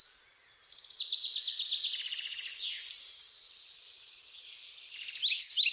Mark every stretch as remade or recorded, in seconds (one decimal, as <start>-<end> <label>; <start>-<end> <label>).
0.0-2.5 recorded; 2.5-3.9 remade; 3.9-5.7 recorded